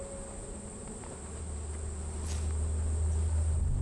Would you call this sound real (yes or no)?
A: yes